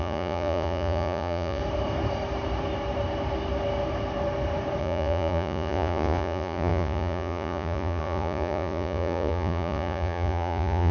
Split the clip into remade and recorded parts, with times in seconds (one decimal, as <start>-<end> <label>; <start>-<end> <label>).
0.0-1.6 remade; 1.6-4.8 recorded; 4.8-10.9 remade